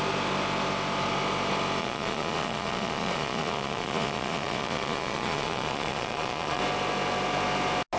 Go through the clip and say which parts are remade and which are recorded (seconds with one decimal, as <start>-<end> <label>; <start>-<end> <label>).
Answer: 0.0-1.8 recorded; 1.8-6.6 remade; 6.6-8.0 recorded